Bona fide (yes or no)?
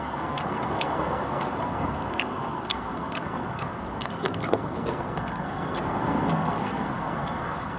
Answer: no